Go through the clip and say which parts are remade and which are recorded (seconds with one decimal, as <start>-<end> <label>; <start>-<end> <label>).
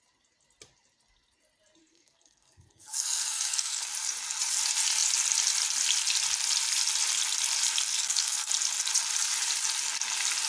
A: 0.0-1.8 recorded; 1.8-3.9 remade; 3.9-7.9 recorded; 7.9-8.5 remade; 8.5-10.5 recorded